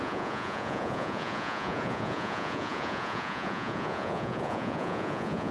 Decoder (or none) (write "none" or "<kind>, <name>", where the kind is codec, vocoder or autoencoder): vocoder, Vocos